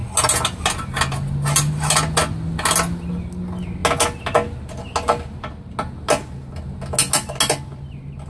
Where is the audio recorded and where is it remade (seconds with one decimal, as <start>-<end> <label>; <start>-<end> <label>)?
0.0-8.3 recorded